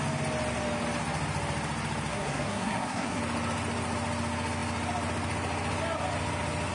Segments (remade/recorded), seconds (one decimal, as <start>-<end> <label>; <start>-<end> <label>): 0.0-2.1 recorded; 2.1-3.2 remade; 3.2-6.7 recorded